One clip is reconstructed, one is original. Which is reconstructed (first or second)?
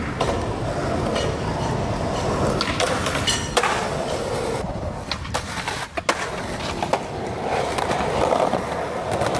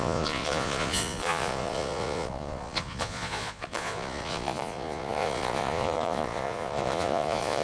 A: second